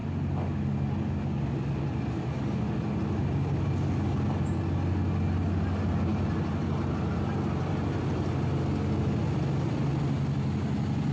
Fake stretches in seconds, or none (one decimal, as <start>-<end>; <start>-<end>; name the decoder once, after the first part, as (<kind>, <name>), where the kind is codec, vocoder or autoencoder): 6.1-8.2 (vocoder, BigVGAN v2)